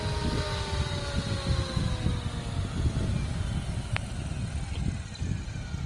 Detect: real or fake real